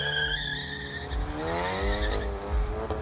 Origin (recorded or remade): recorded